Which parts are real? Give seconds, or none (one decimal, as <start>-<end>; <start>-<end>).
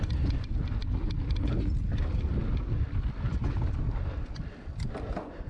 0.0-5.5